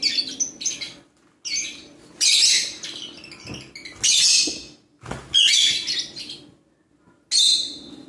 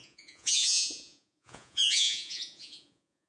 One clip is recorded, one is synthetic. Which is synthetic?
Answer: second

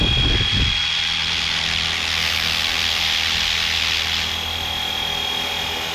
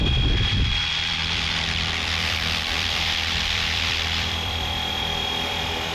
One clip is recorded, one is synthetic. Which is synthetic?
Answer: second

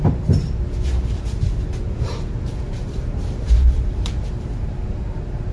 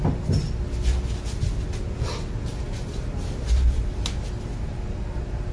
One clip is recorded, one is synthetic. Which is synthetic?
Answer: first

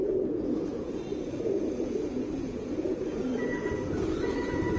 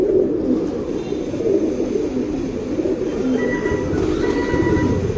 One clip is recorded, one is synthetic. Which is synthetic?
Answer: first